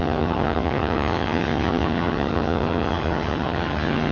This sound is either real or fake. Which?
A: fake